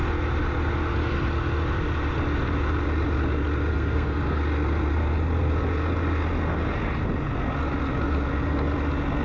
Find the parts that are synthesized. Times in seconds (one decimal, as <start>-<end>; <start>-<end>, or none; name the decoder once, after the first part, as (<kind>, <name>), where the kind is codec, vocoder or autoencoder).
3.7-4.4 (codec, SNAC)